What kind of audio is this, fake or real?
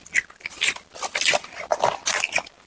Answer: real